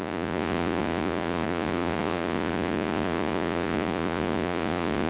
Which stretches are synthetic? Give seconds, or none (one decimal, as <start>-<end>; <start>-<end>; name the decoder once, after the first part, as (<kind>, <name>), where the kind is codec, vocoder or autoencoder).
0.0-5.1 (vocoder, Vocos)